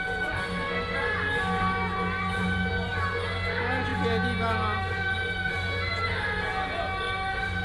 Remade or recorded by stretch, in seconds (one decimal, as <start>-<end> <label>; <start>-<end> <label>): 0.0-7.6 recorded